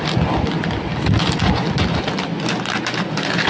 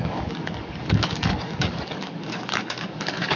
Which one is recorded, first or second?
first